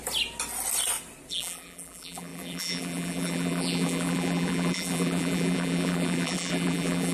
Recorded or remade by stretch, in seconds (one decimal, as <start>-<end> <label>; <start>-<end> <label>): 0.0-1.3 recorded; 1.3-7.1 remade